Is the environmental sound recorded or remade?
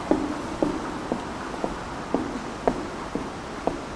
recorded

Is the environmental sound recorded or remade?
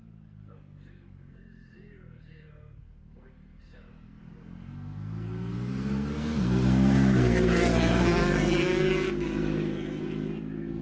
remade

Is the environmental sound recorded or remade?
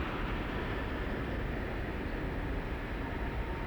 recorded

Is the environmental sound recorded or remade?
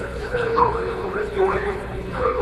remade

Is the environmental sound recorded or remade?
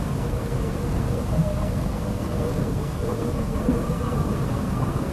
remade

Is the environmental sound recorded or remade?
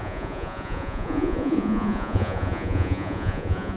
remade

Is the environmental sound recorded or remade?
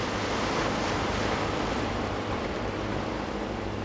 recorded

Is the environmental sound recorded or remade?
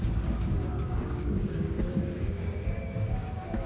remade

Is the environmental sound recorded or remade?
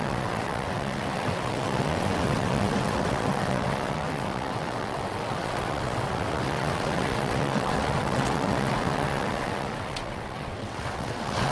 remade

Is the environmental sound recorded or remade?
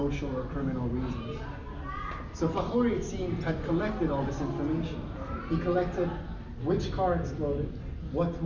recorded